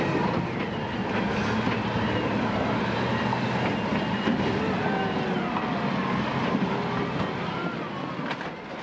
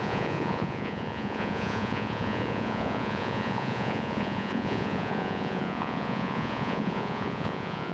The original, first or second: first